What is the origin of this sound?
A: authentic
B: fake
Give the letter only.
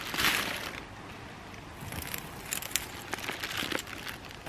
A